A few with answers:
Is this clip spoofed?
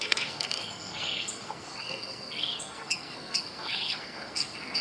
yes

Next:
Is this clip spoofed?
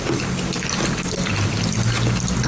no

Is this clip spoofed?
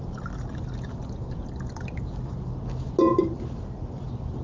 no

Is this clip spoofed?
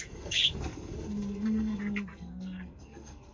yes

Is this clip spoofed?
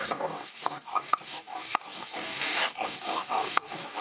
yes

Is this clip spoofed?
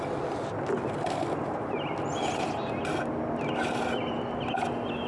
no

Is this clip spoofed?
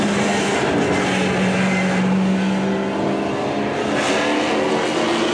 no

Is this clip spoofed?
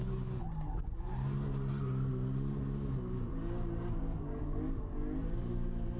no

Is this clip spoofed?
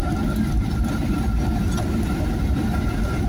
no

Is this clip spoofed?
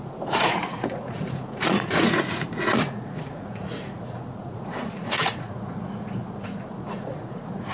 yes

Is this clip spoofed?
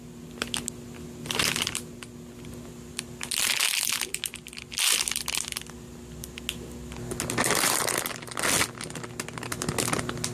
no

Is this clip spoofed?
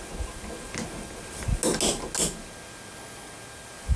no